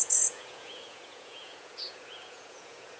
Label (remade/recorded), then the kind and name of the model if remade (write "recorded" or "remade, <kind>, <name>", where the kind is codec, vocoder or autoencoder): remade, vocoder, Vocos